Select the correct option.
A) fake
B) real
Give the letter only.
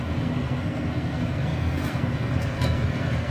A